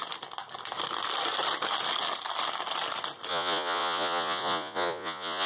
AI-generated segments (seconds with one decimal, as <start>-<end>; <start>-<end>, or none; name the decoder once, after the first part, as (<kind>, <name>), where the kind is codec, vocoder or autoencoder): 3.3-5.5 (vocoder, Vocos)

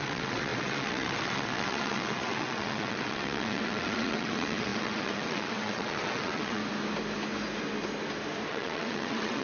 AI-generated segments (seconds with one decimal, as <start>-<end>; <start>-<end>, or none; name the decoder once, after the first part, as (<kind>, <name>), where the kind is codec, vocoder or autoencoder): 0.0-6.6 (vocoder, WaveNeXt); 8.5-9.4

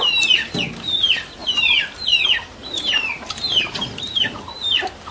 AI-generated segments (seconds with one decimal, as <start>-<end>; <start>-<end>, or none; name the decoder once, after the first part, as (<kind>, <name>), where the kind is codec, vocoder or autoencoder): 2.6-4.1 (vocoder, BigVGAN v2)

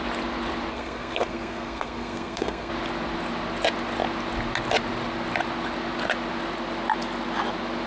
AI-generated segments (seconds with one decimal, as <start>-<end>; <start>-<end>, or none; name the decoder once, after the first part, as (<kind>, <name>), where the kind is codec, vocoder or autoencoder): 0.7-2.7 (codec, SNAC)

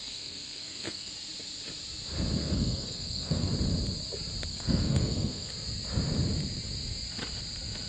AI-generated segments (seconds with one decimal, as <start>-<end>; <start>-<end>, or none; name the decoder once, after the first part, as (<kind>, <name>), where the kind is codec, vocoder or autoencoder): 0.0-1.1 (codec, SNAC); 2.4-3.5; 4.5-5.5

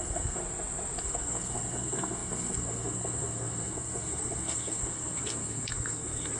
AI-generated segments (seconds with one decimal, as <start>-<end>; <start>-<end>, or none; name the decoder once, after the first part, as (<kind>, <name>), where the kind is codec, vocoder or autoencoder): 0.0-0.4 (codec, SNAC); 1.0-6.4